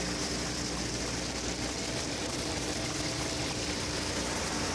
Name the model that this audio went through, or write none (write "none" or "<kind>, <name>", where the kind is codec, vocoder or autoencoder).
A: vocoder, BigVGAN v2